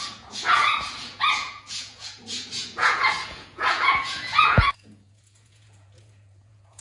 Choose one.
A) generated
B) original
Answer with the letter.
A